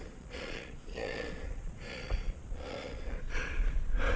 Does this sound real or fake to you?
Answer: fake